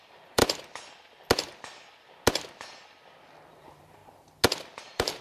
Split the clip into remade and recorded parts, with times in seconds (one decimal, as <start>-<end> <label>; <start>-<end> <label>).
0.0-0.4 remade; 0.4-3.5 recorded; 3.5-4.0 remade; 4.0-4.8 recorded; 4.8-5.2 remade